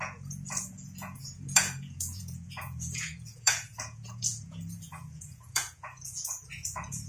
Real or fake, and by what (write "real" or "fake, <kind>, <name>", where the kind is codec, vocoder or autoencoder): fake, vocoder, Vocos